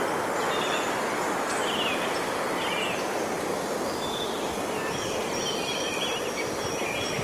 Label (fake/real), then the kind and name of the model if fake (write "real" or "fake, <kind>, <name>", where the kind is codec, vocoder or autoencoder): real